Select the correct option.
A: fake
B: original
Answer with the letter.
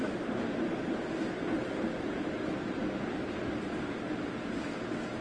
B